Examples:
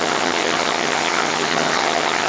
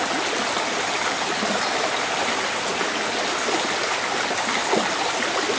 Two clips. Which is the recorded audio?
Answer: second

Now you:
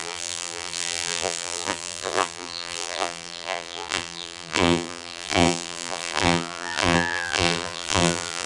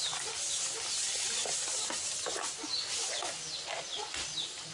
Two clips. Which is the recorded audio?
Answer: second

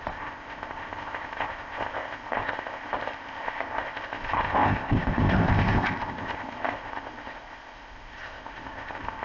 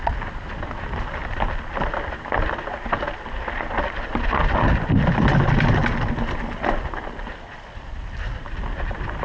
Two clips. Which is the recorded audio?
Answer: second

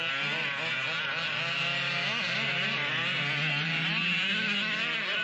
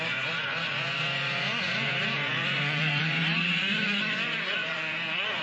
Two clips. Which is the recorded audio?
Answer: first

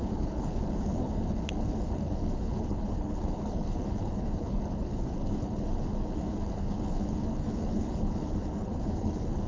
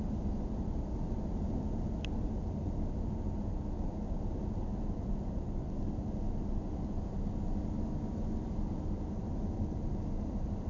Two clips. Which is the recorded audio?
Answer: second